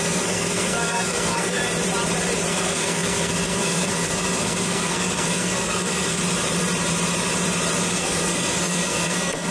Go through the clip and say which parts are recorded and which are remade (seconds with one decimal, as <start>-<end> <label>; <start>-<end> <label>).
0.0-1.6 remade; 1.6-2.5 recorded; 2.5-6.2 remade; 6.2-7.9 recorded; 7.9-9.5 remade